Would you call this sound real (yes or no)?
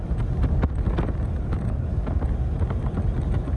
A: yes